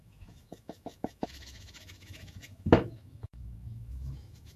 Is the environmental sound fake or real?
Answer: fake